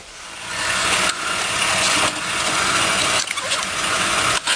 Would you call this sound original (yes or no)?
no